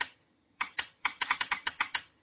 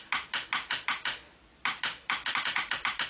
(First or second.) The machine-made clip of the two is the first